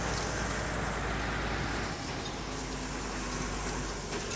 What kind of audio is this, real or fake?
real